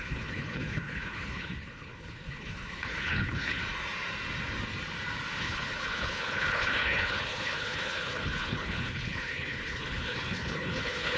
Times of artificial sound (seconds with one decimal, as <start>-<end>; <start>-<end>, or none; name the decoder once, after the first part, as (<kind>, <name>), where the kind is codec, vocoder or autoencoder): 0.0-3.6 (codec, HILCodec); 5.4-11.2